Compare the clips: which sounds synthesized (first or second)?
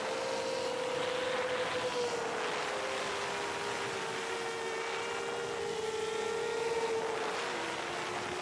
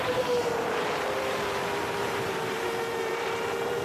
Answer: second